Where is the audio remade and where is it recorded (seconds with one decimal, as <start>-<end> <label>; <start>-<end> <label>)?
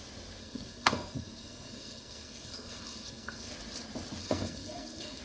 0.0-0.4 recorded; 0.4-3.5 remade; 3.5-4.2 recorded; 4.2-5.2 remade